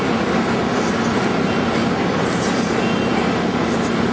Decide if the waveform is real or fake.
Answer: real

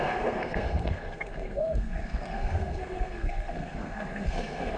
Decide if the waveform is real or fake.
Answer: fake